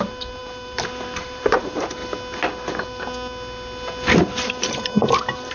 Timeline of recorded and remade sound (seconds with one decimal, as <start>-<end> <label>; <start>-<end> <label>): 0.0-2.0 remade; 2.0-4.2 recorded; 4.2-5.5 remade